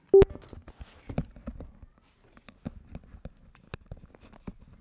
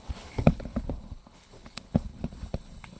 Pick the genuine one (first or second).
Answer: first